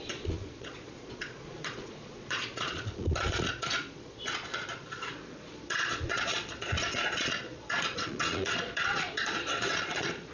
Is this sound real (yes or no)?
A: no